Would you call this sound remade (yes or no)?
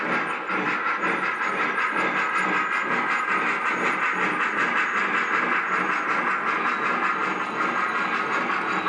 no